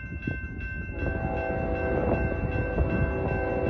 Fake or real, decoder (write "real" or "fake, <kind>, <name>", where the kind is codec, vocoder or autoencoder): real